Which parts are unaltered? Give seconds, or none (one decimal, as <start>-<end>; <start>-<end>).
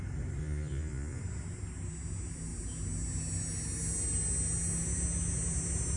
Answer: 0.0-0.4; 1.2-6.0